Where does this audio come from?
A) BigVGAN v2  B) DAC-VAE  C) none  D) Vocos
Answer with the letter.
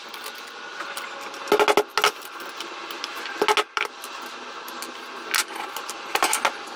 C